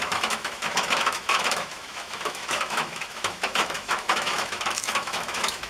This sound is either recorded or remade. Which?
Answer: remade